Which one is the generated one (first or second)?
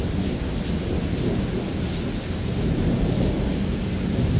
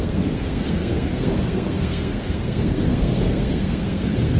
second